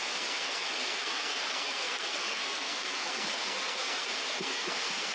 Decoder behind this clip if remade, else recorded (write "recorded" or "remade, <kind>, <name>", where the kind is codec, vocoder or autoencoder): remade, codec, SNAC